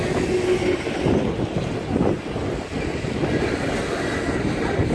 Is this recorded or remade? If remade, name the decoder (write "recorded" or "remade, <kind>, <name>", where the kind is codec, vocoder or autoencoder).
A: recorded